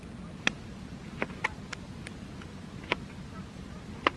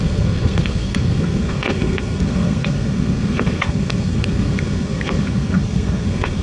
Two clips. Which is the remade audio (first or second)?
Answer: second